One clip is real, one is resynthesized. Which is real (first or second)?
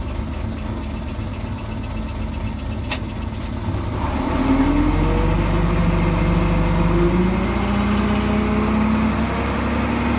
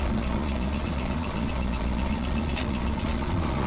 first